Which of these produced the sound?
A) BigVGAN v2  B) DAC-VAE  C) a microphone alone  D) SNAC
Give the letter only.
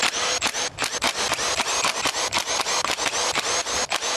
C